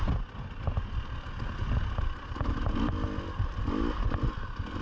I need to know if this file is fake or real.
real